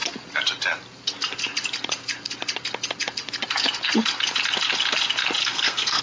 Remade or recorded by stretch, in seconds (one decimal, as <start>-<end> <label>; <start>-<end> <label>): 0.0-5.4 recorded; 5.4-6.0 remade